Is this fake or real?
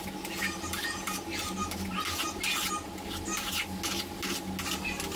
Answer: real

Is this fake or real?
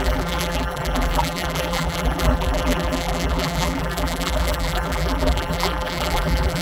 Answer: fake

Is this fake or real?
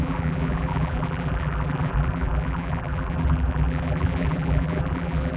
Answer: fake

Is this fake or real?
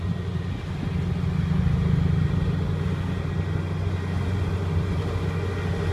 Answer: real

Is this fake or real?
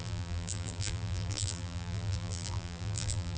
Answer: fake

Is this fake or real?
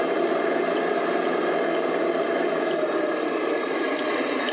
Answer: fake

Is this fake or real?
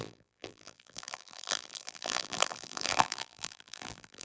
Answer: fake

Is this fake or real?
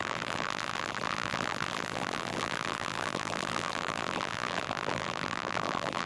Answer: fake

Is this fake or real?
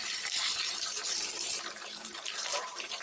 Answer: fake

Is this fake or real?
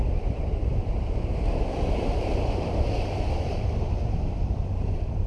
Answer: fake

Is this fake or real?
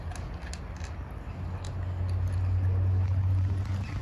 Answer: real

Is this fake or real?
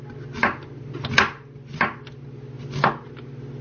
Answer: real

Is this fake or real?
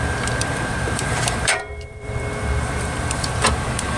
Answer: fake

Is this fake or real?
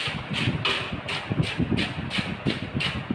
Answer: real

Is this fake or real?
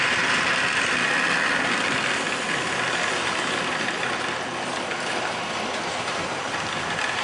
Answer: real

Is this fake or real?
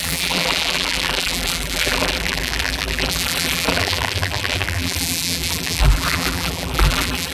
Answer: fake